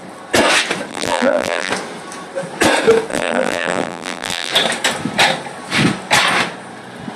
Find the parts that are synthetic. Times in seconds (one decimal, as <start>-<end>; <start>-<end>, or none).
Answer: 0.9-1.7; 3.1-4.5